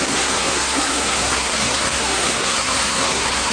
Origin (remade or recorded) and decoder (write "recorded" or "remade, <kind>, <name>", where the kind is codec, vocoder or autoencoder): remade, codec, SNAC